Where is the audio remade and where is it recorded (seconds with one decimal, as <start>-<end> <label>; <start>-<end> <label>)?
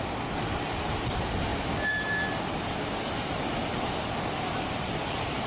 0.0-5.5 recorded